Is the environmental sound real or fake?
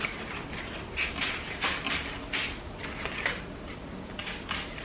real